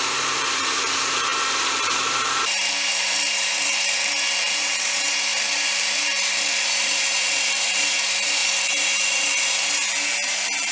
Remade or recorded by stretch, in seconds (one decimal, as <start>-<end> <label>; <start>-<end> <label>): 0.0-10.7 remade